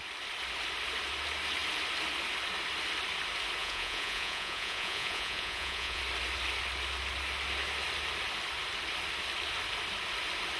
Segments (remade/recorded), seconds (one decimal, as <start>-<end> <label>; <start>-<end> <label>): 0.0-3.6 recorded; 3.6-6.0 remade; 6.0-10.6 recorded